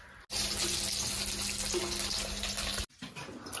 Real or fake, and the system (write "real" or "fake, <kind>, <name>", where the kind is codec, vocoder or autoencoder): real